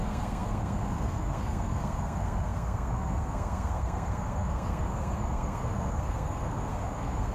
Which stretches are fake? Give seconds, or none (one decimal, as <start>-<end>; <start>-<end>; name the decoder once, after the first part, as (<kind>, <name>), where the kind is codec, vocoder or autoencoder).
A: 0.0-7.3 (codec, SNAC)